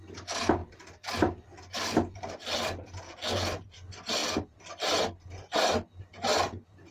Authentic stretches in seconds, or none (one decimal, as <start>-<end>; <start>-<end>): 0.0-6.9